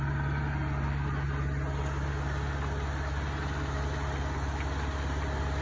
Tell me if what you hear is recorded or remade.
recorded